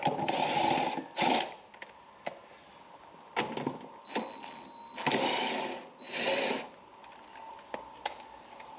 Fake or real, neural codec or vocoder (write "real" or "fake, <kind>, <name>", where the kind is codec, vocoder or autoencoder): real